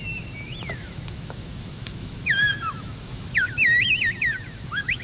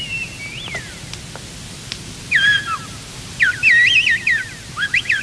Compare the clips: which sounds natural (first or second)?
second